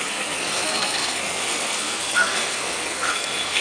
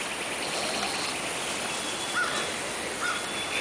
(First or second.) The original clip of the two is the second